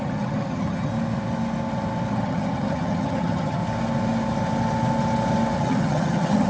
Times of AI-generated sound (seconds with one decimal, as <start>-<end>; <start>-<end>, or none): 0.0-0.9; 2.1-3.6; 5.6-6.5